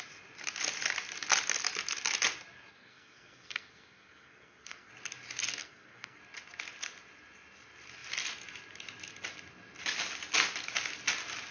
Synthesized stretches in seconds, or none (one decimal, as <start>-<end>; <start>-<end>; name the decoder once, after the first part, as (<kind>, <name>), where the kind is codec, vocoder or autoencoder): 2.7-4.9 (codec, SNAC); 5.6-6.2